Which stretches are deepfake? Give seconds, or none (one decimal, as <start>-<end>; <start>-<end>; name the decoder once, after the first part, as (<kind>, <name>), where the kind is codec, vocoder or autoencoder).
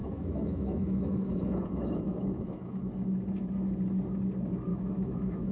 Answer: 0.0-2.9 (autoencoder, DAC-VAE); 4.7-5.5